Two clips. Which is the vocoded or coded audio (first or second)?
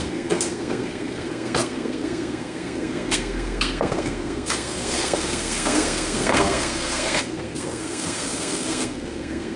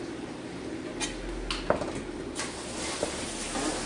first